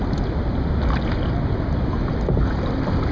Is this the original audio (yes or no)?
yes